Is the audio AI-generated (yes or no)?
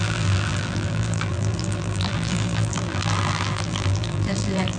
yes